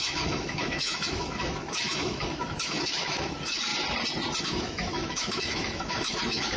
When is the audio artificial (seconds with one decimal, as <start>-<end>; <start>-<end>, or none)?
0.0-3.7; 4.4-6.6